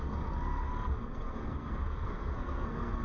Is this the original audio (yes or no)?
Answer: no